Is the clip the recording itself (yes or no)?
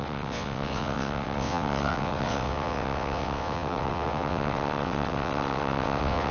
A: no